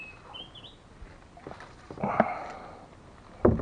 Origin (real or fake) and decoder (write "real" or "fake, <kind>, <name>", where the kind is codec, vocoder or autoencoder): real